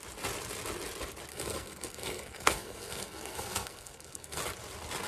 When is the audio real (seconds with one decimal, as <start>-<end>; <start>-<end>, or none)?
0.0-1.3; 4.4-5.1